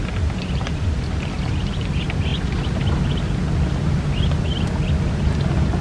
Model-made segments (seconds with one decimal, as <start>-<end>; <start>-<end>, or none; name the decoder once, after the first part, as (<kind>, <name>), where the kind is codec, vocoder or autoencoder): none